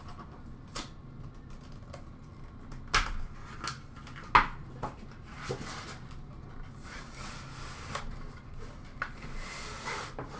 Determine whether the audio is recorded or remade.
recorded